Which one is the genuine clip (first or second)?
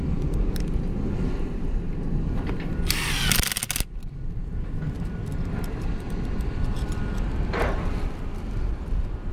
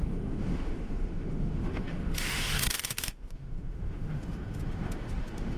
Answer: first